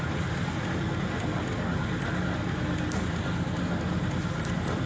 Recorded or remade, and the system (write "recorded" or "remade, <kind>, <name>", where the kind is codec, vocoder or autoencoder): recorded